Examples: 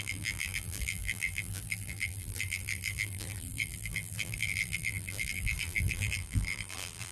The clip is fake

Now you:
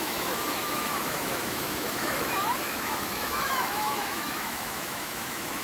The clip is fake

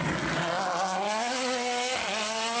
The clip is real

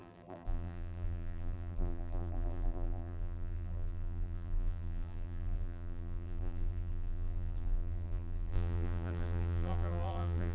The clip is fake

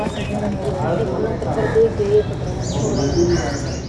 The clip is real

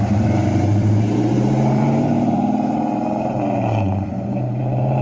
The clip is fake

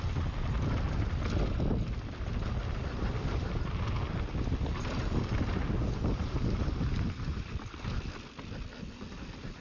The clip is real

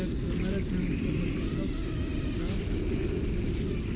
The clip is real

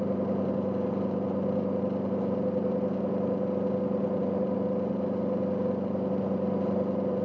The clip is real